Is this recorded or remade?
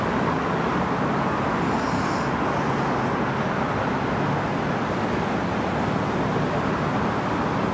recorded